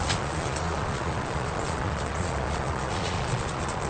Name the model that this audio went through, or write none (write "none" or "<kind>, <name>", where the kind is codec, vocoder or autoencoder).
vocoder, Vocos